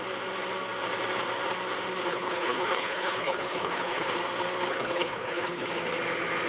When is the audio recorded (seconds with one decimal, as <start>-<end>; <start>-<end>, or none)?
0.0-2.1; 4.1-4.7; 5.7-6.5